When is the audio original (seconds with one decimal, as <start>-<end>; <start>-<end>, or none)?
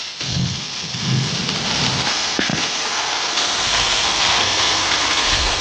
1.3-2.1